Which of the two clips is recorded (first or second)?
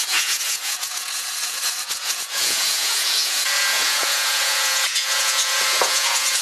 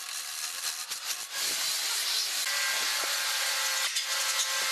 second